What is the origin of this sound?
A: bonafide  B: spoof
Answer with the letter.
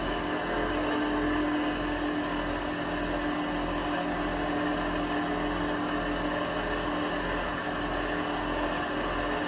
A